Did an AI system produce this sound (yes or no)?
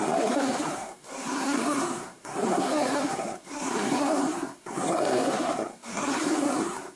yes